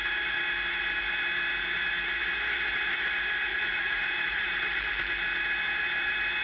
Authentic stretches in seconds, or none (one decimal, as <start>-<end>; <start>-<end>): 0.0-3.5; 4.4-6.4